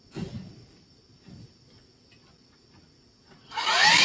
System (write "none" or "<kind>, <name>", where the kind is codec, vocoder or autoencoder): none